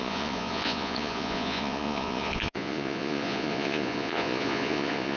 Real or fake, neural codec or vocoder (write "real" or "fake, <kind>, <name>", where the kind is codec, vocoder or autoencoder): fake, vocoder, Vocos